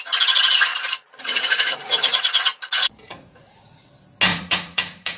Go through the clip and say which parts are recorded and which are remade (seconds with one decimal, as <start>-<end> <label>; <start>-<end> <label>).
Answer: 0.0-0.7 recorded; 0.7-3.8 remade; 3.8-4.3 recorded; 4.3-5.2 remade